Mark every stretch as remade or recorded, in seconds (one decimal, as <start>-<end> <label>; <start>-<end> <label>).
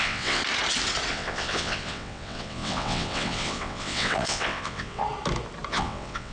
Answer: 0.0-0.4 remade; 0.4-1.1 recorded; 1.1-5.0 remade; 5.0-5.7 recorded; 5.7-6.3 remade